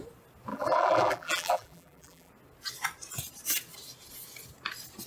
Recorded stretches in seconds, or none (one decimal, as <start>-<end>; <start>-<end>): 0.0-0.5; 2.3-5.1